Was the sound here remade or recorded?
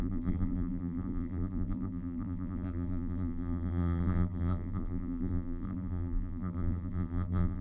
remade